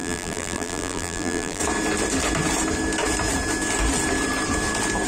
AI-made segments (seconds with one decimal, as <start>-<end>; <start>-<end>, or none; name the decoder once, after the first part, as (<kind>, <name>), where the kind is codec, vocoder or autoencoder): 0.0-1.6 (vocoder, BigVGAN v2)